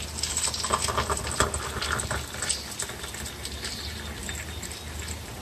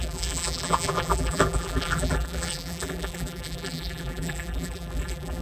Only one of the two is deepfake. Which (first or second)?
second